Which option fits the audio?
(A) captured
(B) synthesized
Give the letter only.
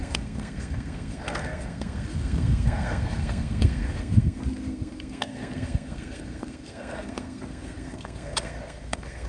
B